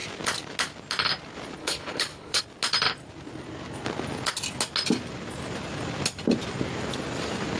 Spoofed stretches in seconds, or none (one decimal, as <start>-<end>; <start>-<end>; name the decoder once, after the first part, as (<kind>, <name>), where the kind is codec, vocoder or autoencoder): 1.6-2.4 (codec, HILCodec)